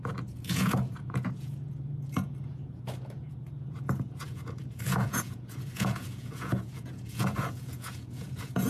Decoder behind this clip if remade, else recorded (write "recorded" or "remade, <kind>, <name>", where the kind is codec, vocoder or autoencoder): remade, vocoder, Vocos